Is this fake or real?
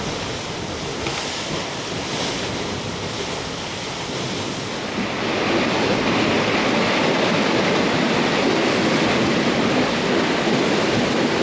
real